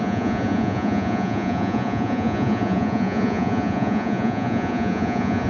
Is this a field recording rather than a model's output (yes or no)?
no